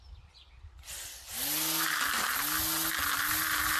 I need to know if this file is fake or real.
real